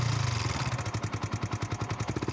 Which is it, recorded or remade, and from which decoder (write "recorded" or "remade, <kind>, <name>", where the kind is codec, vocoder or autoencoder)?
recorded